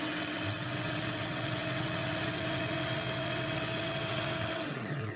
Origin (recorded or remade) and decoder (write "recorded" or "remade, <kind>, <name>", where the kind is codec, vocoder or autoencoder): remade, vocoder, WaveNeXt